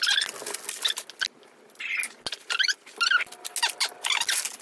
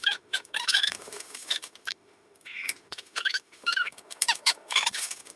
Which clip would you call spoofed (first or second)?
second